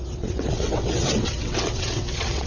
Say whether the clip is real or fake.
fake